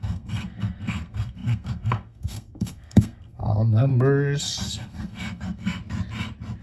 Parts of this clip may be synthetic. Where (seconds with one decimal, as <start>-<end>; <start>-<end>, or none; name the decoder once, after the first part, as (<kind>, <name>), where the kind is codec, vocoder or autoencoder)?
0.0-3.9 (codec, SNAC); 4.4-5.8